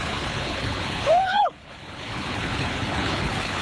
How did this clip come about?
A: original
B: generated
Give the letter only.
B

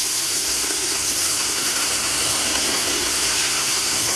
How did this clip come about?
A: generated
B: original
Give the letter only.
A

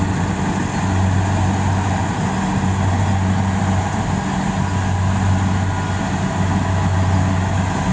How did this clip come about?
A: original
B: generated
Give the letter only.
A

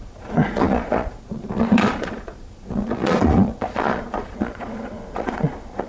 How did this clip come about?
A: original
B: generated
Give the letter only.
B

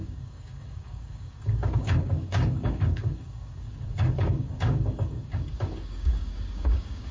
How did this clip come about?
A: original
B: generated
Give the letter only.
B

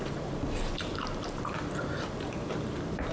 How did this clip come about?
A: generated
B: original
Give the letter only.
A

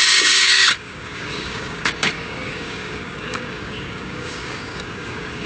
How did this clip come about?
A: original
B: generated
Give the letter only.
B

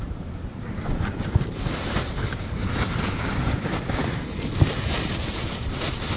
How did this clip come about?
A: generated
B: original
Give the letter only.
A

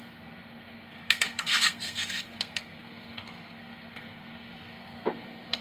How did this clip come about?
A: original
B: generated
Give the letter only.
B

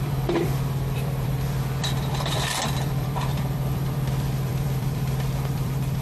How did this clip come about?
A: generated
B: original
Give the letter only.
A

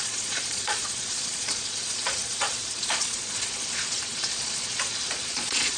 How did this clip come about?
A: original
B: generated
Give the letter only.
B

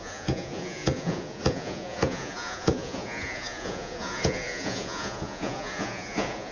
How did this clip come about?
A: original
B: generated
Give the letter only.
B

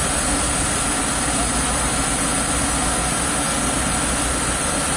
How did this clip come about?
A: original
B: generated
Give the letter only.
A